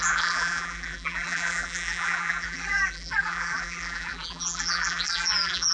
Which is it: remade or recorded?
remade